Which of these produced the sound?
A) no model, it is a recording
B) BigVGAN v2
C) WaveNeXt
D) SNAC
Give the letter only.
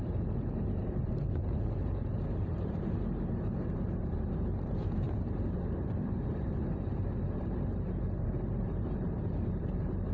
B